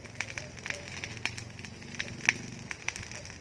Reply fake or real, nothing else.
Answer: real